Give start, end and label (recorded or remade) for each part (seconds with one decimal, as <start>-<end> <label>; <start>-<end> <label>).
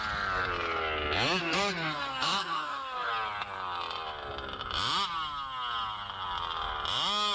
0.0-1.4 recorded; 1.4-3.1 remade; 3.1-7.3 recorded